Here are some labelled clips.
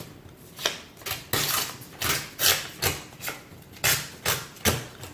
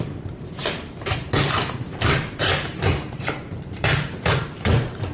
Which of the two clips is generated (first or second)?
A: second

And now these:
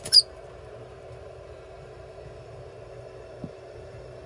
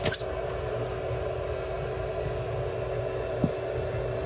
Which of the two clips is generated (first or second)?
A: first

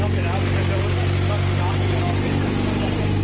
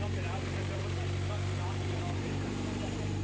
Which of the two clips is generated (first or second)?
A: second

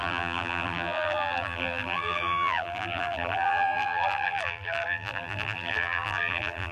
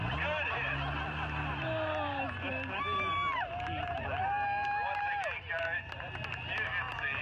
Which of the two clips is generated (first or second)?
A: first